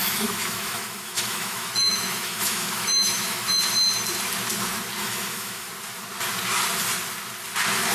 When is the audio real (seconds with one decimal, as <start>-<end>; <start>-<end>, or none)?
3.6-5.0; 5.7-7.9